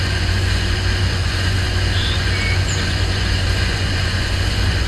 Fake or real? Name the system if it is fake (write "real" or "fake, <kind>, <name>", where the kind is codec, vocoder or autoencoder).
fake, vocoder, Vocos